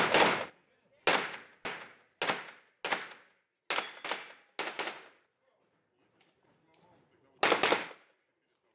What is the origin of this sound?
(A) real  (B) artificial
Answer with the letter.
A